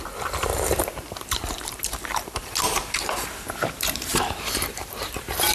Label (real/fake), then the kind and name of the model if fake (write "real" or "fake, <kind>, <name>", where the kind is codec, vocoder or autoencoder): fake, vocoder, BigVGAN v2